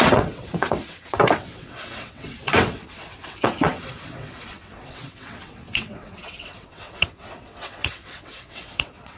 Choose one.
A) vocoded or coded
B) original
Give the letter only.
A